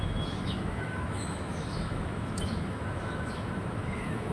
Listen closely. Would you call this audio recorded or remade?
remade